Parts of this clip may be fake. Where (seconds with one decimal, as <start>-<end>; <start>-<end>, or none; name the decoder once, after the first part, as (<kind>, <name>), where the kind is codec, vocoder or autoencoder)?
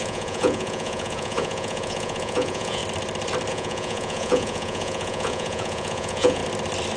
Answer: 0.0-2.8 (vocoder, Vocos); 3.5-6.4